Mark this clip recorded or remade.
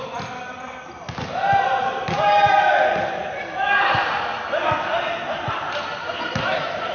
recorded